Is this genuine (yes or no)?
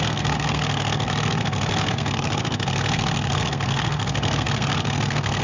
no